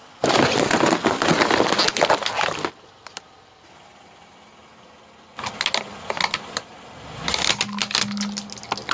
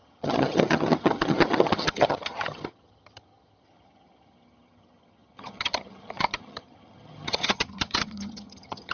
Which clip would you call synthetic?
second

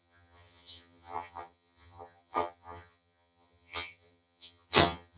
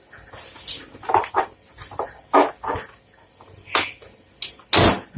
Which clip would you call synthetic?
first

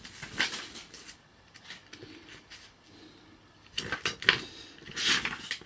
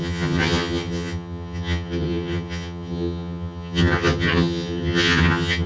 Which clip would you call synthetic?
second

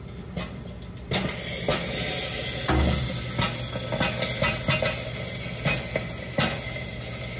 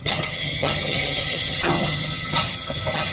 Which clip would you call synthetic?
second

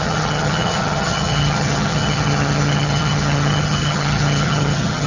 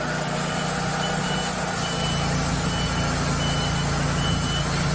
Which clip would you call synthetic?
first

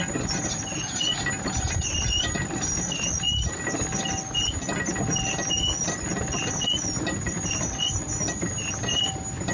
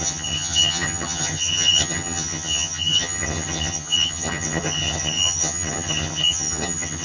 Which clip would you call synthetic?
second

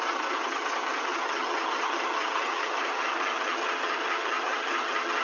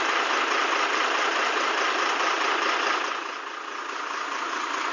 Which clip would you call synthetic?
first